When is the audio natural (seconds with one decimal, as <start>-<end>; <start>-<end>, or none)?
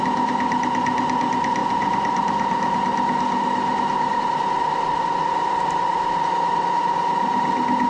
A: 0.0-7.9